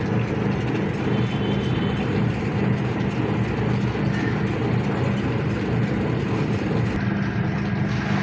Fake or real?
real